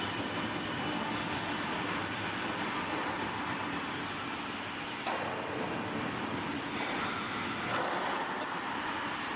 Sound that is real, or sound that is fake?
real